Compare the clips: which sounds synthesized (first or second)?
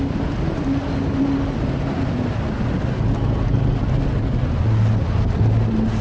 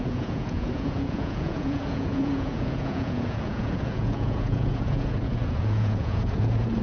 second